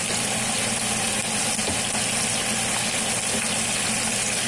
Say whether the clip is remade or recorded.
recorded